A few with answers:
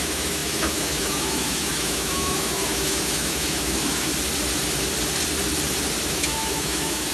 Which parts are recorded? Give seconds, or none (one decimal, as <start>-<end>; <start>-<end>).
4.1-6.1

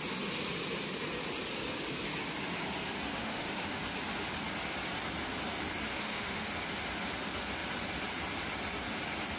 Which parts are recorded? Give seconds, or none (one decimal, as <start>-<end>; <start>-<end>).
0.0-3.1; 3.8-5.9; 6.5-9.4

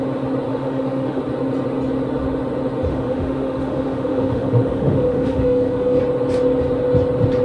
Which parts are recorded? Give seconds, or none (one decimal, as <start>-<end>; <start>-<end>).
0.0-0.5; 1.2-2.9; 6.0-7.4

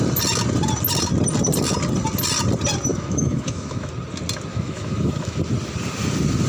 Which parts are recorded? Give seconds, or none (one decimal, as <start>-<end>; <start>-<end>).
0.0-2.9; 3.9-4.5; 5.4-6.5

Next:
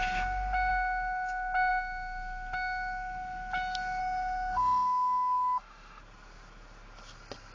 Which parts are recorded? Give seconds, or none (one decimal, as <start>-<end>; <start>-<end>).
0.0-4.0; 6.0-7.5

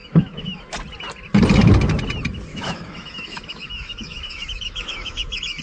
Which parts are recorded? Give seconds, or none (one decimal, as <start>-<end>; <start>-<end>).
0.6-2.5

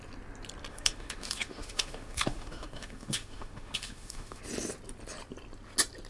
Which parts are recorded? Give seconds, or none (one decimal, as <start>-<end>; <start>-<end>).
0.0-0.7; 4.4-6.1